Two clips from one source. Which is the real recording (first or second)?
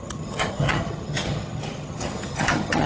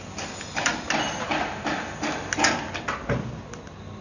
second